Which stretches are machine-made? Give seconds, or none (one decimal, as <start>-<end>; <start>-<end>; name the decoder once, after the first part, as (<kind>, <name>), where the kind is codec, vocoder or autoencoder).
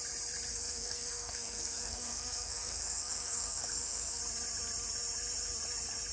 0.5-4.2 (codec, SNAC)